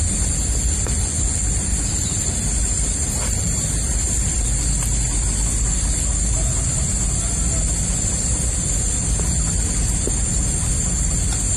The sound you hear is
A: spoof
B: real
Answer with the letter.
B